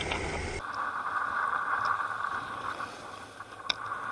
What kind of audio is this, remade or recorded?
recorded